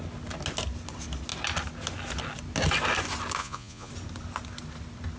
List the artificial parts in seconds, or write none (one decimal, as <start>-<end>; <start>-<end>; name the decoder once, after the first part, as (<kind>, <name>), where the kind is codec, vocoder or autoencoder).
3.4-3.9 (vocoder, Vocos)